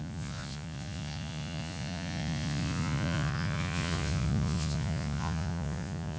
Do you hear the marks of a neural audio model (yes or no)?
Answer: yes